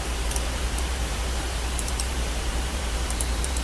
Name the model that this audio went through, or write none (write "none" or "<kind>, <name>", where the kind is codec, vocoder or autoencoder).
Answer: vocoder, BigVGAN v2